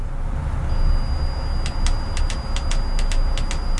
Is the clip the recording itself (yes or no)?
yes